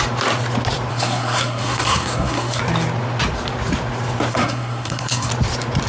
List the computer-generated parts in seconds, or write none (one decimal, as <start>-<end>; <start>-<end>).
0.9-2.6; 4.3-5.3